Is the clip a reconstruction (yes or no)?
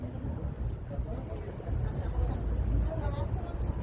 no